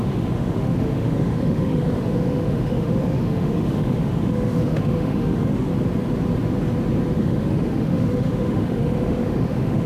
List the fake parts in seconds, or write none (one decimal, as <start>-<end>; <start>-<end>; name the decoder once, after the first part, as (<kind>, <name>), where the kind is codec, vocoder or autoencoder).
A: 0.0-5.7 (autoencoder, DAC-VAE); 7.2-9.9